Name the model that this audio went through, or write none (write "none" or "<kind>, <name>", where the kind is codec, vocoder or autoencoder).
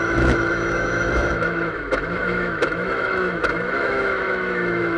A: autoencoder, DAC-VAE